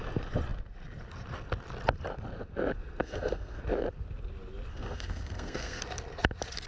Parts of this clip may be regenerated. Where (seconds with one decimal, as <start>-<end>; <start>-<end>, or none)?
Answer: 3.0-3.6; 4.7-5.8